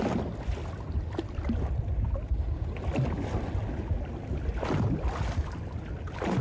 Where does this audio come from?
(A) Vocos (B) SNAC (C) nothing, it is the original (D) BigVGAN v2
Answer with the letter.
C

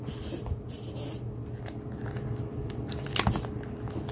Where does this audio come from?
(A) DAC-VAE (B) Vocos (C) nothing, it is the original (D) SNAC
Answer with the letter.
C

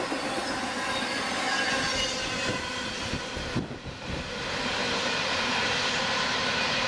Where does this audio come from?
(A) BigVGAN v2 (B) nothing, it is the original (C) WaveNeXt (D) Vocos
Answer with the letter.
B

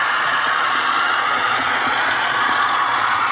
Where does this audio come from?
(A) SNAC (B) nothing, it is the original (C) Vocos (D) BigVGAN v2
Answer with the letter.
C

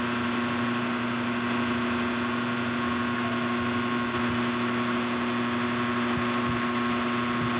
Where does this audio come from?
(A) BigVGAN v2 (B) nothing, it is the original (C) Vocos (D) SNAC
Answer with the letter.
B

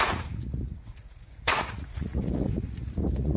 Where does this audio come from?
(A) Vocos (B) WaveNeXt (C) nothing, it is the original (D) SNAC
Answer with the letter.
A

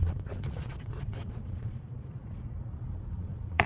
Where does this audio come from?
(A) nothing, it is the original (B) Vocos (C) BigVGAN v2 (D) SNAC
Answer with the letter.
B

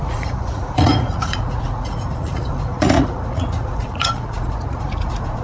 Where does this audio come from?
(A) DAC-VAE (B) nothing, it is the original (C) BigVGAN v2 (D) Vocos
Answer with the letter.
D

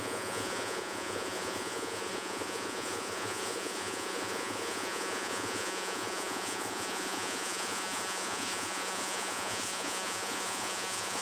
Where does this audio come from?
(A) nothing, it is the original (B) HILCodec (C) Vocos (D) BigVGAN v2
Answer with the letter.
C